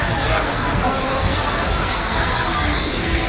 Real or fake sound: fake